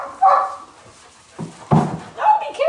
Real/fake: real